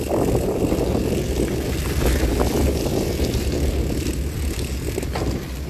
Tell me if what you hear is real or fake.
real